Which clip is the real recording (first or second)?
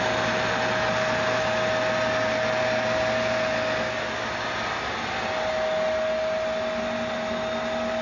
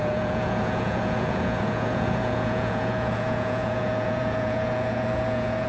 first